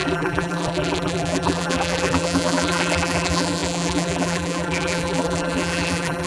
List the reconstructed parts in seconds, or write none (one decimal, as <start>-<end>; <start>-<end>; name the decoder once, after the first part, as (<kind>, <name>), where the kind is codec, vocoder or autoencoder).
0.0-6.3 (vocoder, BigVGAN v2)